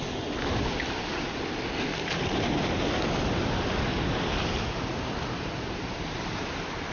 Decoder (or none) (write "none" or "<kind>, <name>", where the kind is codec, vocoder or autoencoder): none